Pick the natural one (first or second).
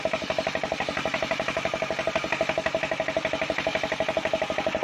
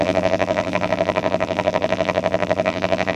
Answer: first